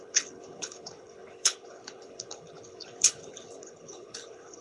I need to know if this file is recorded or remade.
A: remade